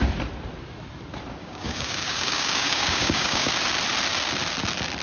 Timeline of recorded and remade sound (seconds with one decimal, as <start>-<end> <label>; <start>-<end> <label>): 0.0-1.4 recorded; 1.4-3.5 remade; 3.5-5.0 recorded